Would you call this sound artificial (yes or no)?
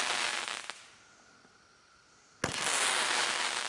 no